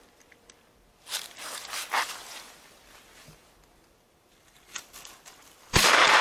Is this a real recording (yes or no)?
no